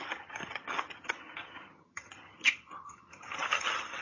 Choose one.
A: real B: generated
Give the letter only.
B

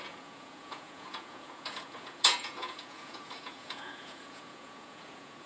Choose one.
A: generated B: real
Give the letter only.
A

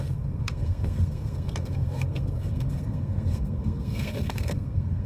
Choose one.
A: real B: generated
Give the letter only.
B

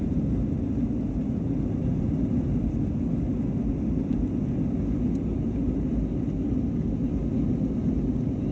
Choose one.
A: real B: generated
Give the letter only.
A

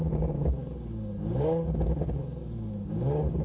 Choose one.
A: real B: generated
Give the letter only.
B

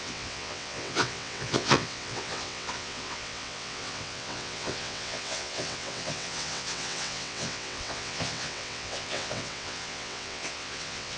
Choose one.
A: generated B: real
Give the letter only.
A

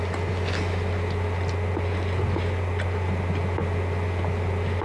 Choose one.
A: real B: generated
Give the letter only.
A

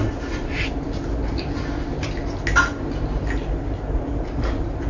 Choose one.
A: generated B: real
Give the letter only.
B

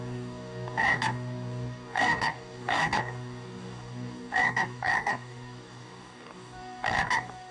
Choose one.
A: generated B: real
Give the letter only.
A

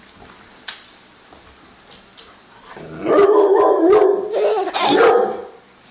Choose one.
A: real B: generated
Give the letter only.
A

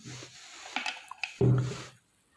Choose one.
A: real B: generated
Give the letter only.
A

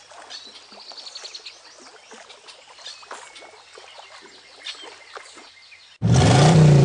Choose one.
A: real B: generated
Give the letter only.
A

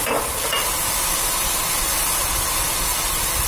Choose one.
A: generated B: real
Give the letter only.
B